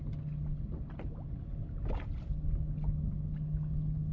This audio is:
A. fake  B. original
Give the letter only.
B